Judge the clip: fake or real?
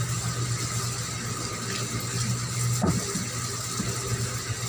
real